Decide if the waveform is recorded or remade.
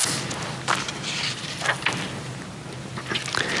recorded